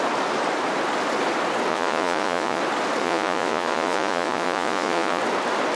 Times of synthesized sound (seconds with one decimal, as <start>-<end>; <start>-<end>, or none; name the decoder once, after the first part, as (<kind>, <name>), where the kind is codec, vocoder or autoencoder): 1.7-2.6 (vocoder, Vocos); 3.0-5.2